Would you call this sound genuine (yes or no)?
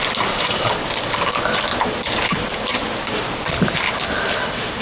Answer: yes